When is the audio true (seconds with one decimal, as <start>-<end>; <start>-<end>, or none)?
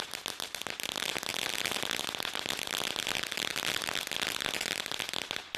0.0-5.6